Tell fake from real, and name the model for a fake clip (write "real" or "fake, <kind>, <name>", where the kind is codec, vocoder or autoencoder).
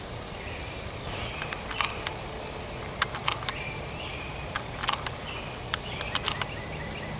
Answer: real